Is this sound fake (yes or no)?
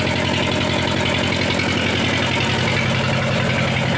no